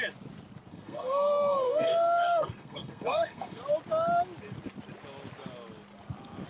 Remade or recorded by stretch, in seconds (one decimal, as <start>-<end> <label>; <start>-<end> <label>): 0.0-0.7 recorded; 0.7-3.6 remade; 3.6-6.5 recorded